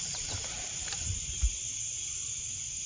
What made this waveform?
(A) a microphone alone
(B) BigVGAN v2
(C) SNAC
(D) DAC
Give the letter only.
A